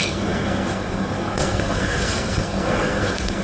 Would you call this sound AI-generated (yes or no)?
yes